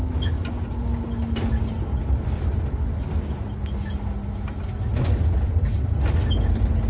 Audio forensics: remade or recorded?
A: recorded